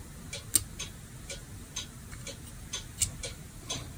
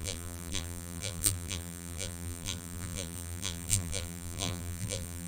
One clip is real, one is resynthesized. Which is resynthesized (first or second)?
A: second